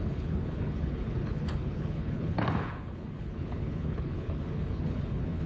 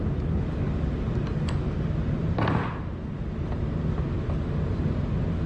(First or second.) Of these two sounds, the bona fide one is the second